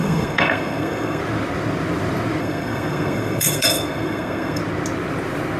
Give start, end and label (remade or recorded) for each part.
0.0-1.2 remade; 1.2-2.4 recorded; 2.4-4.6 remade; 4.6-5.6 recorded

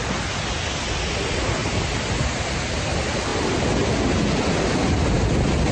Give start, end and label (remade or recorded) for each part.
0.0-1.6 recorded; 1.6-2.4 remade; 2.4-5.7 recorded

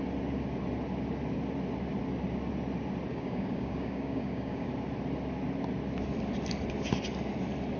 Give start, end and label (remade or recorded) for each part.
0.0-3.1 recorded; 3.1-4.7 remade; 4.7-7.8 recorded

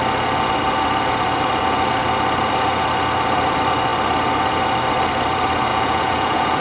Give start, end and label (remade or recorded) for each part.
0.0-5.7 recorded; 5.7-6.6 remade